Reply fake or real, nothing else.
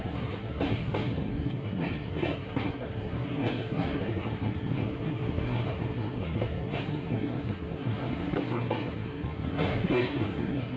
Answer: fake